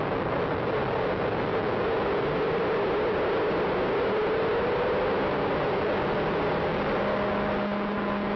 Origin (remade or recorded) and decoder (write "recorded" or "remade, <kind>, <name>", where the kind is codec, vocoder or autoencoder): recorded